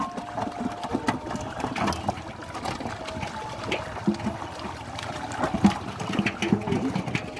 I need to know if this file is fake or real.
real